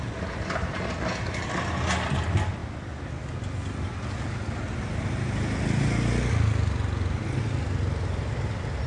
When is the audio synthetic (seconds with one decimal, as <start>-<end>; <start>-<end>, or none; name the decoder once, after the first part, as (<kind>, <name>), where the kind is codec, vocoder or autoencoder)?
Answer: none